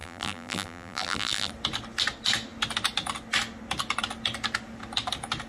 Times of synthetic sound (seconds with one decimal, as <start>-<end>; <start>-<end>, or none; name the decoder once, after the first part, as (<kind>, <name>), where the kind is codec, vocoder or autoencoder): 0.0-1.5 (vocoder, BigVGAN v2)